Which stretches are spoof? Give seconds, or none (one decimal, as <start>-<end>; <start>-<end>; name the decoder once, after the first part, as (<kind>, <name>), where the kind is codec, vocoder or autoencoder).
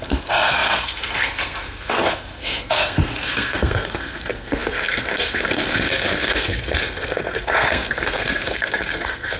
0.0-9.4 (codec, SNAC)